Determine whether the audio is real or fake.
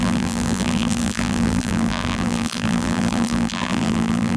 fake